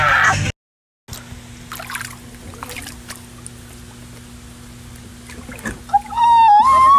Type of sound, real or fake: real